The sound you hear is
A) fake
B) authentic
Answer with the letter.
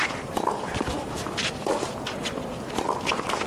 B